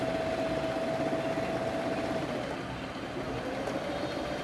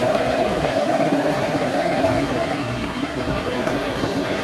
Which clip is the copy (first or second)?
second